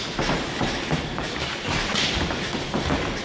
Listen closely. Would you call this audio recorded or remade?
recorded